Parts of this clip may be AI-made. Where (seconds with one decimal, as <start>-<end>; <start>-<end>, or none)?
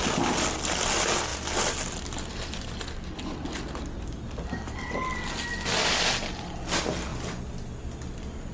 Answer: none